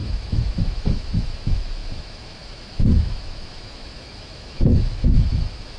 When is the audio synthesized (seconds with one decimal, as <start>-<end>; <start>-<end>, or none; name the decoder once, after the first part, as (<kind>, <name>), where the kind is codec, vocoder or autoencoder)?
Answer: 0.0-5.8 (autoencoder, DAC-VAE)